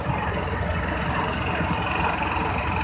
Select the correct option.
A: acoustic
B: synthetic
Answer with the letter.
B